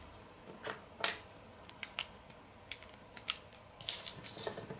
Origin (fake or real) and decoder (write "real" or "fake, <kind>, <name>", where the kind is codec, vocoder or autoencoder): real